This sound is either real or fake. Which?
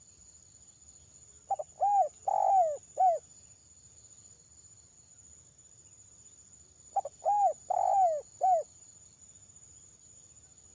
real